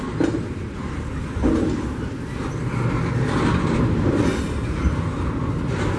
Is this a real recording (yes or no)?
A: yes